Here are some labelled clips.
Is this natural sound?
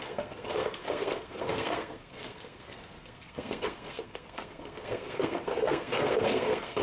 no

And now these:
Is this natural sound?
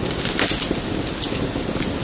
yes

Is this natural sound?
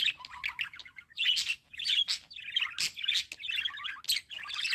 yes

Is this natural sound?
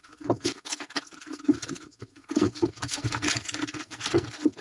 no